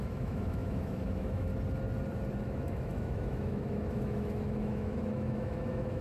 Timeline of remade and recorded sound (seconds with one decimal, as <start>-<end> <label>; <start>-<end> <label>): 0.0-1.5 remade; 1.5-2.4 recorded; 2.4-6.0 remade